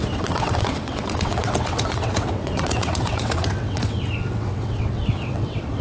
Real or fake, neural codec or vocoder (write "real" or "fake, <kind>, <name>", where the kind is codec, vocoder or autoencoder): fake, vocoder, WaveNeXt